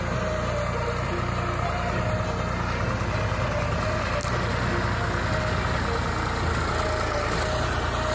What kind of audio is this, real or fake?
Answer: real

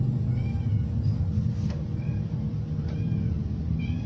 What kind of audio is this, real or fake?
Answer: real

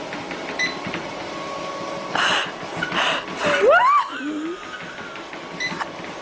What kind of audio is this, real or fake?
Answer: real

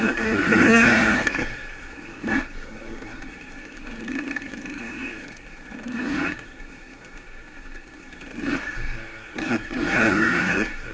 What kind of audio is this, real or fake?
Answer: fake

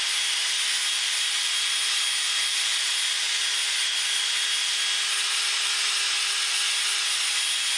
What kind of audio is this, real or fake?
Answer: real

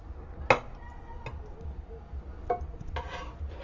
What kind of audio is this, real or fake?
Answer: real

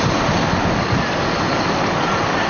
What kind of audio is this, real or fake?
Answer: fake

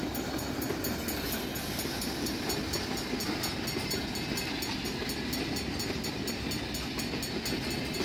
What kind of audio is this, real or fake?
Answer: real